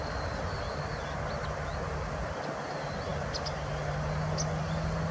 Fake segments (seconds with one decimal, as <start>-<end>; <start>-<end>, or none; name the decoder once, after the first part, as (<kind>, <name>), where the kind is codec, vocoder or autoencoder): none